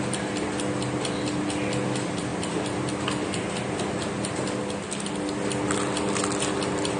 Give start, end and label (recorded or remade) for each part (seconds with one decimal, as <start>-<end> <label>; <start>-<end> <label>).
0.0-7.0 recorded